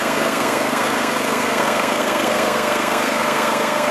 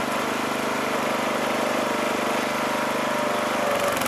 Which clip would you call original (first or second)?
second